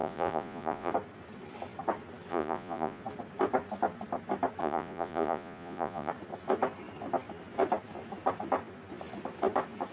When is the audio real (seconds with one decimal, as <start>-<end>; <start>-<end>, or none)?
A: 0.9-2.3; 3.0-4.6; 6.1-9.9